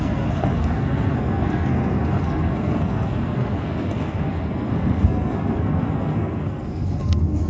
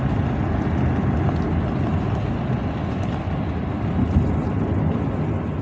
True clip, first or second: second